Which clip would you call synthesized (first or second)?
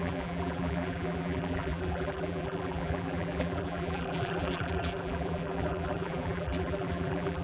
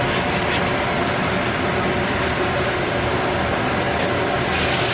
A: first